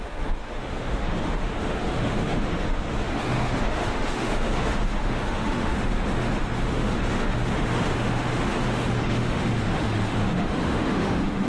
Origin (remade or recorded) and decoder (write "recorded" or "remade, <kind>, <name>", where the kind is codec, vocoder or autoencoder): remade, autoencoder, DAC-VAE